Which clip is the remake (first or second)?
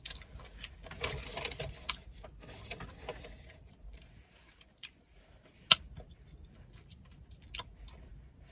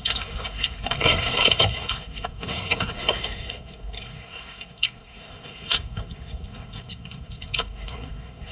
second